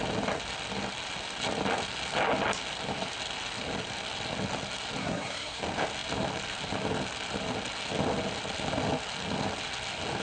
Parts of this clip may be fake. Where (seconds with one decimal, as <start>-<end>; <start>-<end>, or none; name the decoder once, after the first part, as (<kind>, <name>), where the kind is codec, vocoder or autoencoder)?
5.0-5.6 (codec, SNAC)

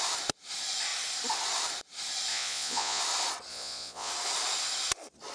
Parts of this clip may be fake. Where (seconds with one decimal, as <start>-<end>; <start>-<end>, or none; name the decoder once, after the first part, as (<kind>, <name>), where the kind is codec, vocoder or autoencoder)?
2.3-3.0 (vocoder, Vocos); 3.5-4.1

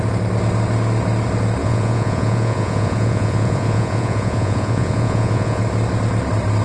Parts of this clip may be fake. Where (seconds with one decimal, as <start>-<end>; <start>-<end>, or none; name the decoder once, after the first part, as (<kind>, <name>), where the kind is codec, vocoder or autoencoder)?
1.6-5.6 (vocoder, Vocos)

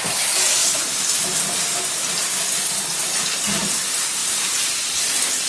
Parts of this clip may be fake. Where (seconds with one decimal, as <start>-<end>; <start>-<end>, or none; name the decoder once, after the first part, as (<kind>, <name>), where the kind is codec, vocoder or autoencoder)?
4.2-5.1 (vocoder, BigVGAN v2)